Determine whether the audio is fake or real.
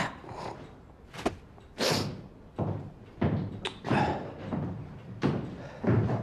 real